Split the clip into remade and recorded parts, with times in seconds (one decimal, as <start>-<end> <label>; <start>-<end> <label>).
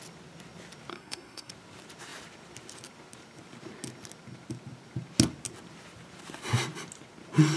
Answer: 0.0-0.9 recorded; 0.9-1.5 remade; 1.5-7.6 recorded